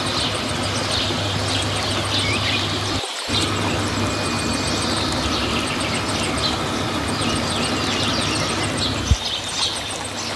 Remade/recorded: recorded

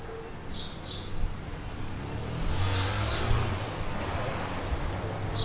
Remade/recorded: recorded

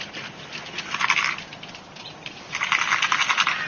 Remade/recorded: recorded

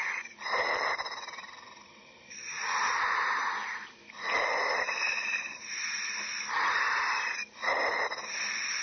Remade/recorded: remade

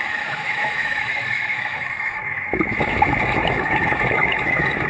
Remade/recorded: remade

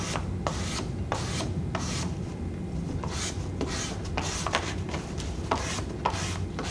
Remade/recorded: recorded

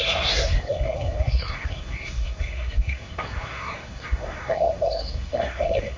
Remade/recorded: remade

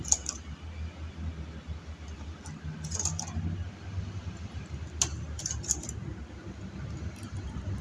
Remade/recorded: recorded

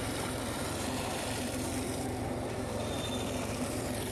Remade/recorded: remade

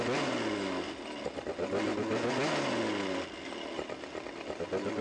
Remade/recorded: recorded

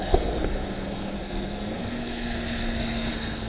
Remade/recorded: remade